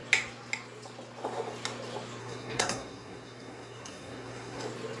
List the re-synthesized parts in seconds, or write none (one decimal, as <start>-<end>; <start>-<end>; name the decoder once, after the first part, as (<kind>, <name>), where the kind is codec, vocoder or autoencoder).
2.2-4.6 (codec, SNAC)